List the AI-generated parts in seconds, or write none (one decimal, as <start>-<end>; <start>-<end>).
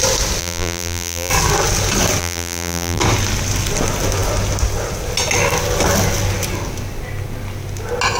0.4-1.3; 2.2-3.0